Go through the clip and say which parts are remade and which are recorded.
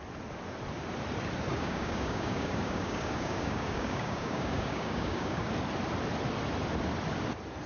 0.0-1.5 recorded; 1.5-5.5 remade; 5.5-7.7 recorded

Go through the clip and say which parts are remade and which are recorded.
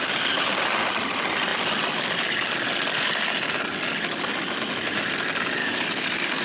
0.0-5.6 recorded; 5.6-6.4 remade